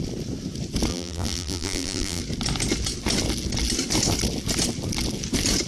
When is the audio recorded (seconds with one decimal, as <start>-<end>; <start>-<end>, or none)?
0.0-0.9; 2.2-5.7